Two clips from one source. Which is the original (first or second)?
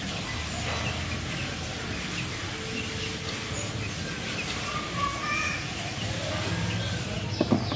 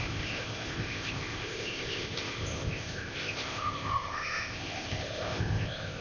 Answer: first